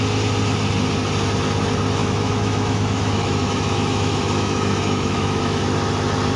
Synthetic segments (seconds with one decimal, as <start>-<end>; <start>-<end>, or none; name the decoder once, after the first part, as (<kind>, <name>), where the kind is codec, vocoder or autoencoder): 2.0-5.6 (autoencoder, DAC-VAE)